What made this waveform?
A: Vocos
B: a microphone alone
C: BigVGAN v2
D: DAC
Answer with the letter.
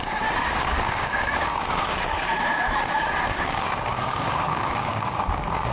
D